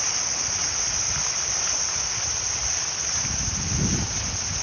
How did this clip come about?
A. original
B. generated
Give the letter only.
A